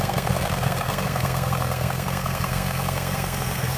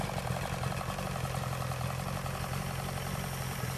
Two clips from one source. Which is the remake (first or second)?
first